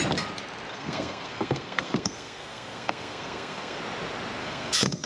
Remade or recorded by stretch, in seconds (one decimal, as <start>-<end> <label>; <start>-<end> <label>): 0.0-0.7 recorded; 0.7-3.8 remade; 3.8-4.4 recorded; 4.4-5.1 remade